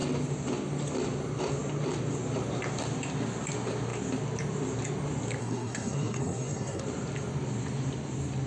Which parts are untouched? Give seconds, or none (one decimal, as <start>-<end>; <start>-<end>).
0.0-5.4; 6.8-8.5